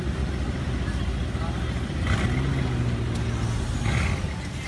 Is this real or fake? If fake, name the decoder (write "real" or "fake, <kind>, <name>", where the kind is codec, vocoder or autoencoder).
real